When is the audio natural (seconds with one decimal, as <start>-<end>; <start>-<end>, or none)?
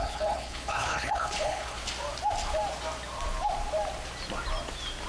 1.8-5.1